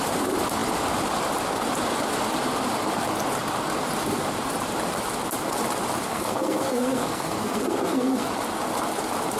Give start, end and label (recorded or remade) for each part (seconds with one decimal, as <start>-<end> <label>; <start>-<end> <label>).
0.0-6.1 recorded; 6.1-8.3 remade; 8.3-9.4 recorded